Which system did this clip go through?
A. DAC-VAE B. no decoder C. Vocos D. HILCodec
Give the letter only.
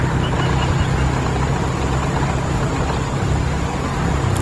B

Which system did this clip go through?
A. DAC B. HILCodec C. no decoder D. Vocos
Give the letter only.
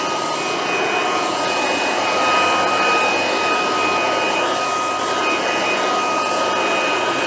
C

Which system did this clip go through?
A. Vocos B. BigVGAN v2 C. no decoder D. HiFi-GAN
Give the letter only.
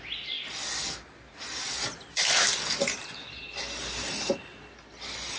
C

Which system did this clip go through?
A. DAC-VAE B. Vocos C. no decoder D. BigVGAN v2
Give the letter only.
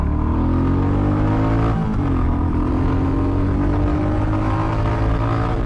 C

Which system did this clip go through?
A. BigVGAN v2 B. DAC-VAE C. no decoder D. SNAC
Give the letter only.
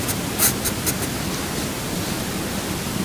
C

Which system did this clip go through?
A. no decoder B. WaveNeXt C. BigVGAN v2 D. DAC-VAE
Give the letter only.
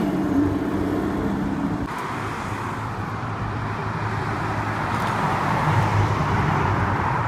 C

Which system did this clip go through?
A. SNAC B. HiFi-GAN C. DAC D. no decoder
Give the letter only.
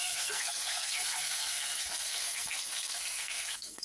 A